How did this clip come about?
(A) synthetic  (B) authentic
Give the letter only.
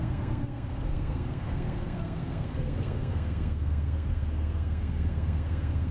A